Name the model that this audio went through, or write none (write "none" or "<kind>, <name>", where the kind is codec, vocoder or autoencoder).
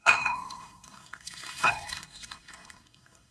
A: codec, SNAC